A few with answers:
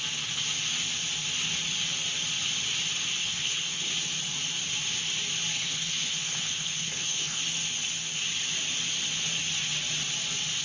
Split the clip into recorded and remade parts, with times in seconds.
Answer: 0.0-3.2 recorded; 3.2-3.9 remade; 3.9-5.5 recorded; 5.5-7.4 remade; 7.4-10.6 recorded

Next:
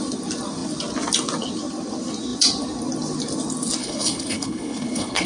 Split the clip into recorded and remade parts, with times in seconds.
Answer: 0.0-3.8 recorded; 3.8-5.3 remade

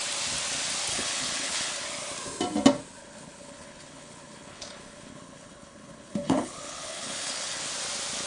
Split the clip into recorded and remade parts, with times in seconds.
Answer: 0.0-0.9 recorded; 0.9-1.7 remade; 1.7-3.0 recorded; 3.0-7.6 remade; 7.6-8.3 recorded

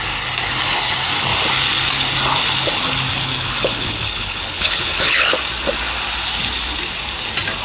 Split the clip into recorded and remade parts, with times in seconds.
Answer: 0.0-3.1 recorded; 3.1-5.3 remade; 5.3-7.6 recorded

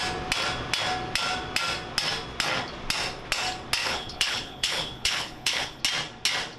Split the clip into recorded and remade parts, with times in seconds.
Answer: 0.0-3.8 recorded; 3.8-5.8 remade; 5.8-6.6 recorded

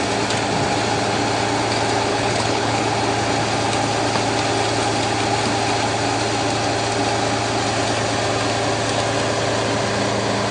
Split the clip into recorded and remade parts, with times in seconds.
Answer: 0.0-2.1 recorded; 2.1-2.8 remade; 2.8-10.5 recorded

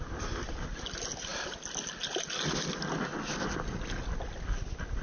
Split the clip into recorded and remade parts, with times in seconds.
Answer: 0.0-5.0 recorded